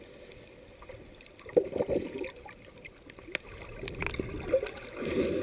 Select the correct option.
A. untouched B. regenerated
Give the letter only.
A